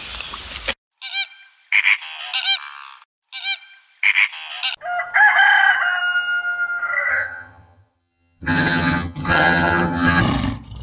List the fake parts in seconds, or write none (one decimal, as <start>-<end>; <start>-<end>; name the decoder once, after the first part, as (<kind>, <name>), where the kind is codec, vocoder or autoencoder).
7.1-10.2 (vocoder, HiFi-GAN)